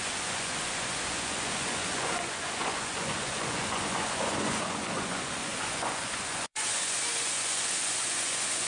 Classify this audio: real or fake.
fake